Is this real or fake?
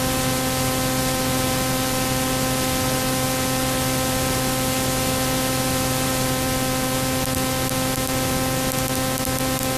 real